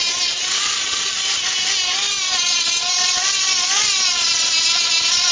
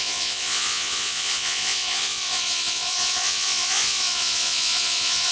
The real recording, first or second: first